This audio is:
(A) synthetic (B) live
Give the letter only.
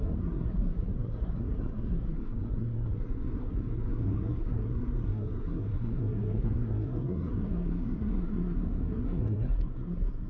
A